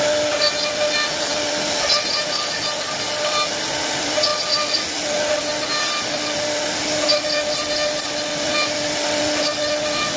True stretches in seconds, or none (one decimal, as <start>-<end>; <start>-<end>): 0.0-10.2